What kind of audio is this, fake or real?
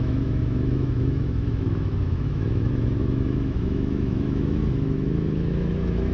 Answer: fake